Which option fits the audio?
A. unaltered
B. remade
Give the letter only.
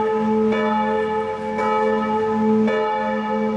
A